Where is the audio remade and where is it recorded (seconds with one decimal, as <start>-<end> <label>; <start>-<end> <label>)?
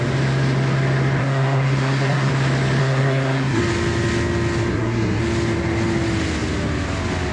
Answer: 0.0-1.2 recorded; 1.2-2.3 remade; 2.3-2.8 recorded; 2.8-3.6 remade; 3.6-4.7 recorded; 4.7-5.2 remade; 5.2-7.3 recorded